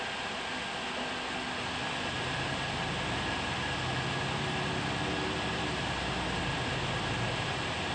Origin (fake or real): real